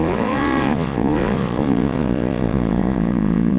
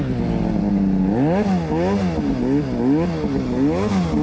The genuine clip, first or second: second